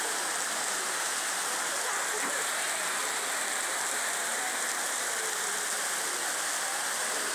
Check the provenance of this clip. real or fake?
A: real